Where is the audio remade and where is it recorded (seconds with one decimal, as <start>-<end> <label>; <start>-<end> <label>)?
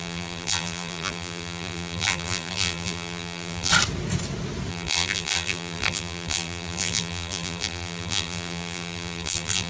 0.0-3.7 remade; 3.7-4.7 recorded; 4.7-9.7 remade